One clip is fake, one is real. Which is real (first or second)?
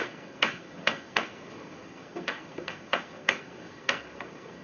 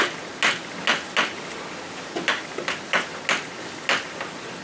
second